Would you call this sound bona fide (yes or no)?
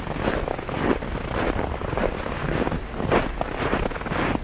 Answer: yes